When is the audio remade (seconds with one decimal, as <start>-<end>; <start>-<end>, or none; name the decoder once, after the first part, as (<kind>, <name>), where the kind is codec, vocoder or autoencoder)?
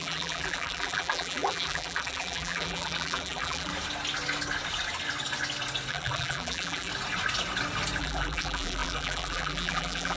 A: 0.0-3.7 (vocoder, BigVGAN v2); 5.9-6.9; 8.0-10.2